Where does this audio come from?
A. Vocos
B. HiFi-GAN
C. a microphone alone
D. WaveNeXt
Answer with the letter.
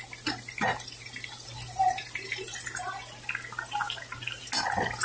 C